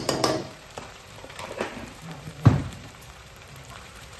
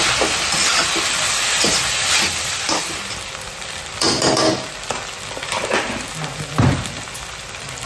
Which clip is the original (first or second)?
second